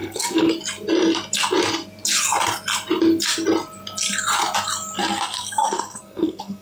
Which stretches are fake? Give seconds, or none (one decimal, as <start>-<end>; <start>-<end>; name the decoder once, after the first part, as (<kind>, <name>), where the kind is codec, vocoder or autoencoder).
0.0-0.5 (codec, SNAC); 5.0-6.6